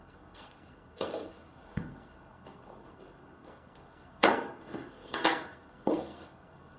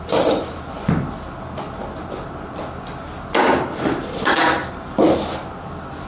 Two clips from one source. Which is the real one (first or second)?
second